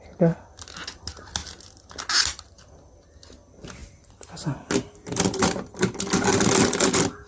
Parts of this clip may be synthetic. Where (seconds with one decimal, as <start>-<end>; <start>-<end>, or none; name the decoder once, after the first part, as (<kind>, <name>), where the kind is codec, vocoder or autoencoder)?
none